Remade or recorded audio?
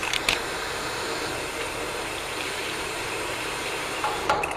remade